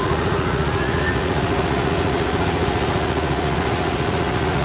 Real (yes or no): no